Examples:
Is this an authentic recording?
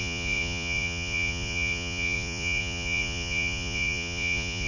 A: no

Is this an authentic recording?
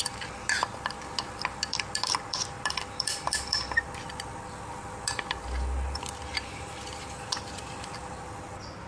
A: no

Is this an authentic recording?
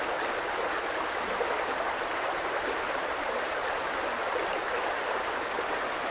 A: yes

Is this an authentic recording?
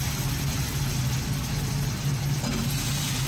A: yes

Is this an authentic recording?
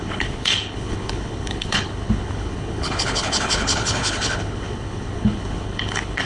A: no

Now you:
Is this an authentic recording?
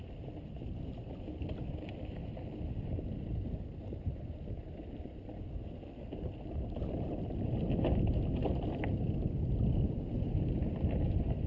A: yes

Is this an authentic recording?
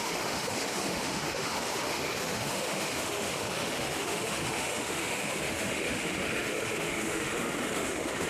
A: no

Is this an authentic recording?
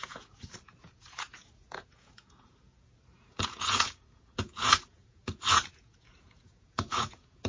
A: no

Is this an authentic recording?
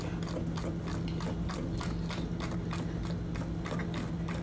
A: yes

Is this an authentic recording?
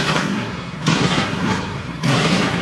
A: no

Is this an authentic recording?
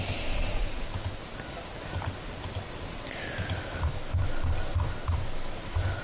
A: yes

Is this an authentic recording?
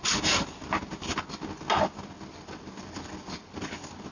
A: yes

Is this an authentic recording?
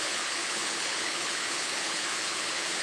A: no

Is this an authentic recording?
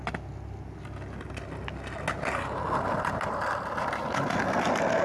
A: yes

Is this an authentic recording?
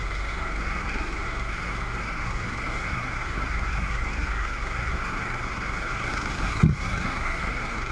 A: no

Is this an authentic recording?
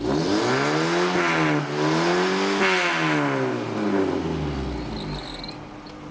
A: yes